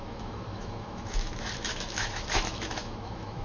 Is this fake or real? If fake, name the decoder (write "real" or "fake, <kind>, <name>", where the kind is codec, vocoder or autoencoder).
fake, autoencoder, DAC-VAE